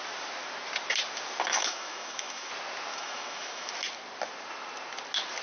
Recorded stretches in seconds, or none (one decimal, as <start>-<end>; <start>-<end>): 0.0-1.5; 2.5-2.9; 3.7-5.4